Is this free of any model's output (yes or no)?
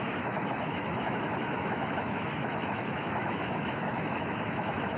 no